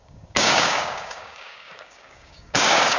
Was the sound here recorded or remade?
remade